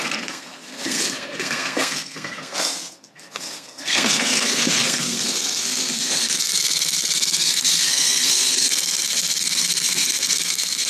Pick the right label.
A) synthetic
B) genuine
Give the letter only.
A